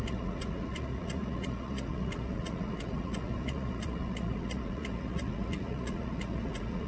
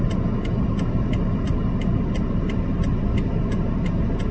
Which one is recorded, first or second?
second